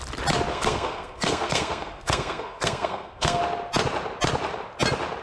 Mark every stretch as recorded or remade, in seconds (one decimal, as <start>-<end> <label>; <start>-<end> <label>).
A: 0.0-0.5 recorded; 0.5-3.4 remade; 3.4-5.2 recorded